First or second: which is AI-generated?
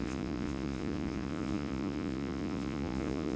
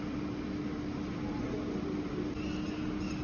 first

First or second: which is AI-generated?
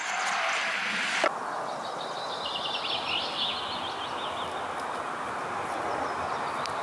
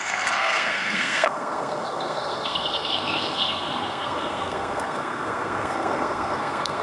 second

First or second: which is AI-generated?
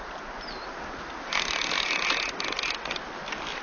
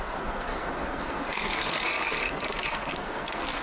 second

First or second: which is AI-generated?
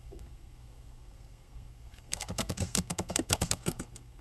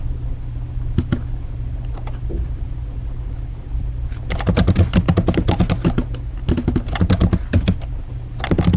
first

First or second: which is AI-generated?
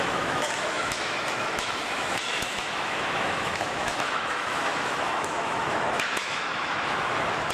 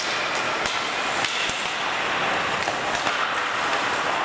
first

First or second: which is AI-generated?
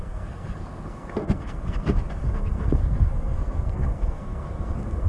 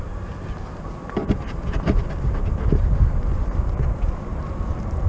first